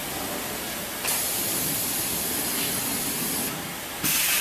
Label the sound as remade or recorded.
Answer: recorded